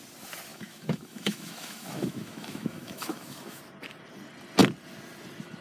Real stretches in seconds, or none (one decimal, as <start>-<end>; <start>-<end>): 0.0-0.5; 3.6-5.6

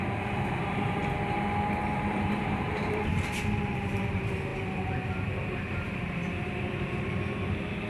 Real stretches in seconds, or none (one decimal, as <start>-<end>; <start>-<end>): 1.0-2.1; 3.1-3.7

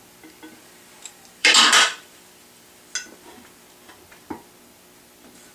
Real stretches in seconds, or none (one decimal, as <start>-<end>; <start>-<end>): 0.0-1.4; 2.8-5.5

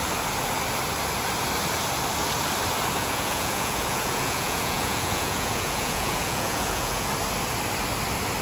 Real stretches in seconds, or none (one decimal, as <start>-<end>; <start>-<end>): 0.0-3.0; 7.1-8.4

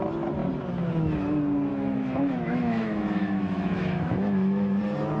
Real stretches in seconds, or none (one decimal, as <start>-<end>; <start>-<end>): 0.0-1.7; 4.8-5.2

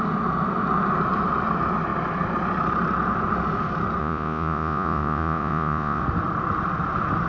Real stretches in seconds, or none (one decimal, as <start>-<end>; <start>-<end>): 0.0-4.0; 6.0-7.3

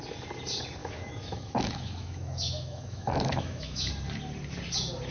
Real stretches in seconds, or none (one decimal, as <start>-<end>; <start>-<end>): 0.0-0.8; 3.9-5.1

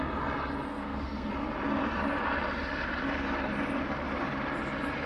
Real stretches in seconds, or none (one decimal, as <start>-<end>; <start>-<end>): 0.0-0.7; 1.3-5.1